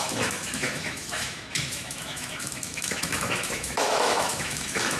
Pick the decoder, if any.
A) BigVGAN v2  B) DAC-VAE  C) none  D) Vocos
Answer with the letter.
B